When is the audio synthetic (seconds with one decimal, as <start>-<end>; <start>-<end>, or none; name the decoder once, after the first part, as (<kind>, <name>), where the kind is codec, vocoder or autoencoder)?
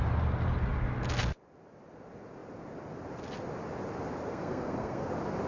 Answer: 4.3-5.1 (codec, SNAC)